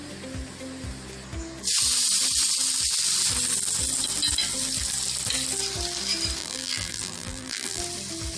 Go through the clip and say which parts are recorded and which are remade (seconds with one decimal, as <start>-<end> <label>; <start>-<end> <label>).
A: 0.0-6.4 recorded; 6.4-7.8 remade; 7.8-8.4 recorded